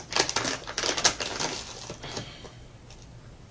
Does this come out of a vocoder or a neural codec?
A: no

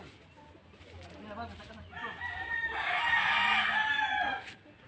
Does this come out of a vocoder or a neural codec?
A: no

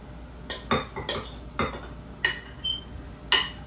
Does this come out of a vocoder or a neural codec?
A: no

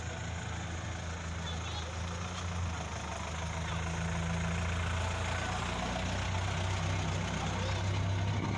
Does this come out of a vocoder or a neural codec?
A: no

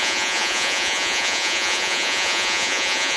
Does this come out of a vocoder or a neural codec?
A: yes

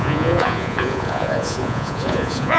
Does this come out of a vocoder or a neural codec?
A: yes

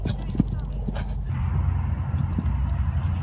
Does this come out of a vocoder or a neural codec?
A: no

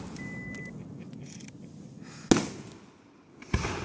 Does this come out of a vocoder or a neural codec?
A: no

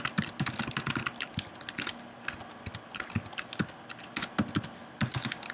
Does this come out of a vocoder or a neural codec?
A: no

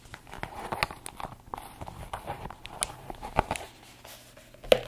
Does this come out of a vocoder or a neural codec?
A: no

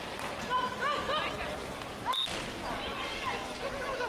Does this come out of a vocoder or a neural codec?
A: no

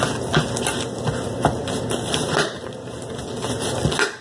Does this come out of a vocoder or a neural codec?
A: no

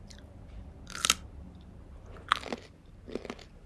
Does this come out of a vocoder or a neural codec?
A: no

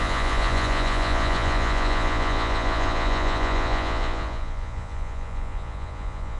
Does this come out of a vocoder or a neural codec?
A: yes